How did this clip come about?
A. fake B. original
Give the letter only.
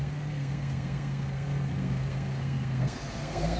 A